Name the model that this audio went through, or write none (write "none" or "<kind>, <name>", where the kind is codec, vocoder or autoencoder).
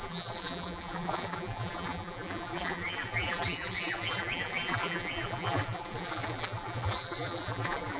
vocoder, BigVGAN v2